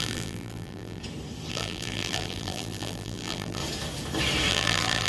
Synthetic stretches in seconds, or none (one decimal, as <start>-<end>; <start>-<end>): 0.0-1.0; 1.5-3.6; 4.5-5.1